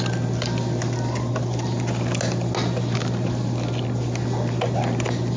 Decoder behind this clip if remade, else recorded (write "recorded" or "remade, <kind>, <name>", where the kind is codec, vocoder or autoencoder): recorded